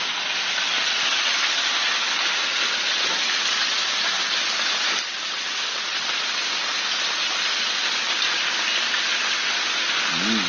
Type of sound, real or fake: real